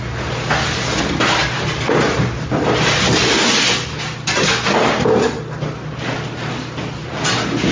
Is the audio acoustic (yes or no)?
yes